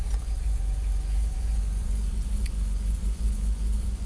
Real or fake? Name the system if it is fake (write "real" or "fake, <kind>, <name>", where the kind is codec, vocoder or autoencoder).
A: fake, vocoder, Vocos